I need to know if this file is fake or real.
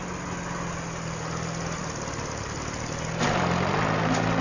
real